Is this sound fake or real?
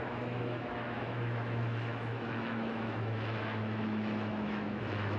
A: fake